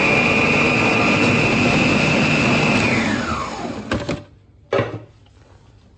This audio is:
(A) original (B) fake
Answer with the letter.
A